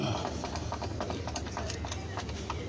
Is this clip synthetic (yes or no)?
yes